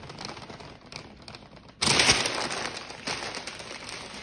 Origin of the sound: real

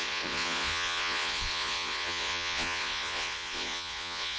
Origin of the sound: fake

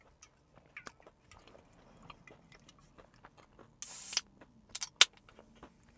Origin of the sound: real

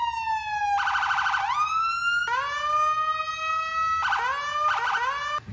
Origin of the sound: real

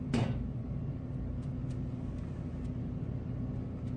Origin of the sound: real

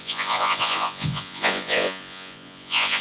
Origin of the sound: fake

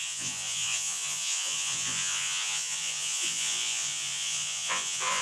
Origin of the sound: fake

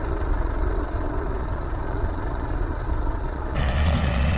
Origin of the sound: fake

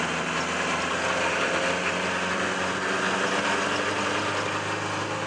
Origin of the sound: real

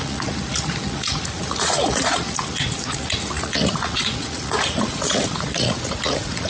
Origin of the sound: fake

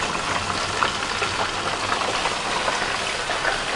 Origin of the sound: real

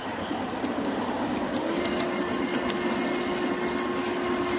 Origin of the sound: real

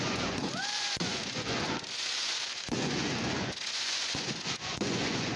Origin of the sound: fake